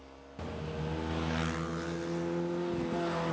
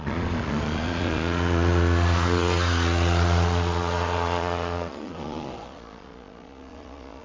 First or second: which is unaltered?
first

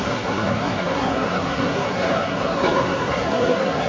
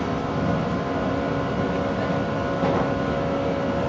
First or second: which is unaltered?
second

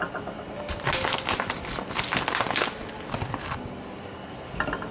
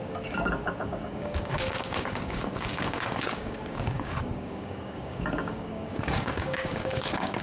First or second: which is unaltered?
first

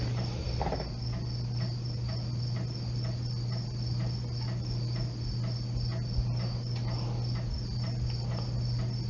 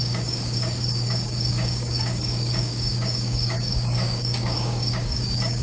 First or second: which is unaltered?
first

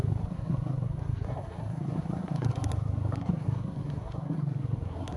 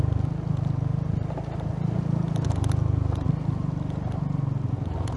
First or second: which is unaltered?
second